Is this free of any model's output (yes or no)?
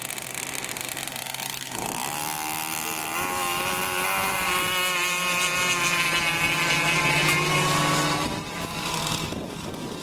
yes